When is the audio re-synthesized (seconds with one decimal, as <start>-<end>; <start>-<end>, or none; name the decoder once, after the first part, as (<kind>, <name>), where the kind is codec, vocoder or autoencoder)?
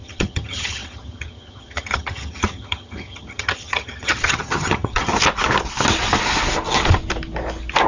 0.0-5.1 (vocoder, HiFi-GAN)